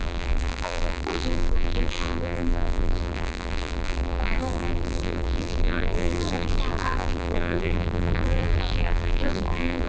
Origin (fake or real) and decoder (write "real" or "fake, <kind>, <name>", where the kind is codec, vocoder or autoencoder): fake, vocoder, BigVGAN v2